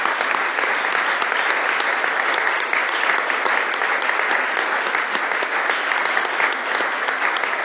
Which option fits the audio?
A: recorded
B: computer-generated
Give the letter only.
A